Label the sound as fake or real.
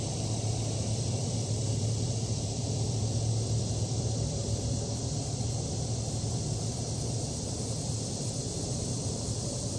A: fake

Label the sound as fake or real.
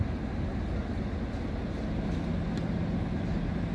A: real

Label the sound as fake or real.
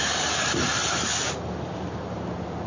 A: real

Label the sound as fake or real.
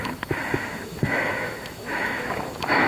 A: fake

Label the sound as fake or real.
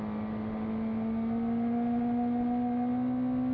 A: real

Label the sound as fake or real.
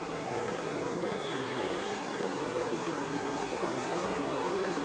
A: fake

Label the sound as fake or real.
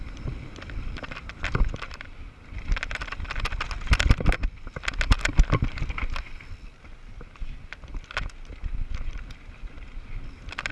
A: real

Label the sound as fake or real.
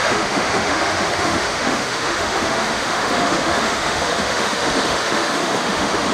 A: fake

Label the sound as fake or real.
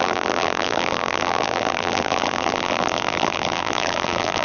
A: fake